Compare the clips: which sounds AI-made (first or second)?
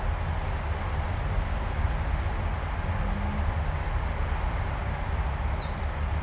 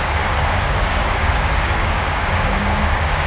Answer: second